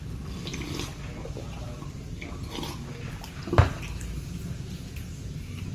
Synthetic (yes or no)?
no